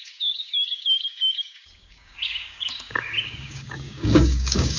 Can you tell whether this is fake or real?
fake